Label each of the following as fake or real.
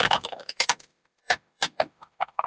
fake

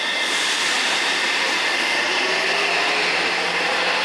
real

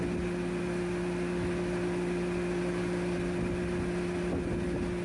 real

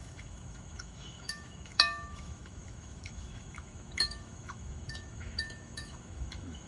fake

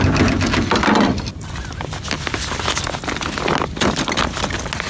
real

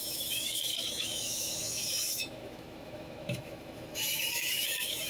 fake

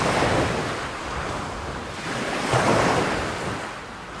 real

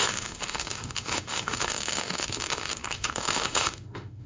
fake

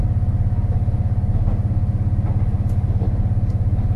real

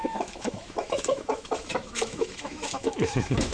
fake